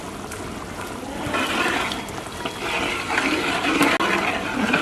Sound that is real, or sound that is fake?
real